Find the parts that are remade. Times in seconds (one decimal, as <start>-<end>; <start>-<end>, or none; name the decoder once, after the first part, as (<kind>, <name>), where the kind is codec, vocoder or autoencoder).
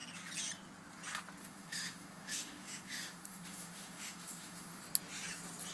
1.4-4.8 (autoencoder, DAC-VAE)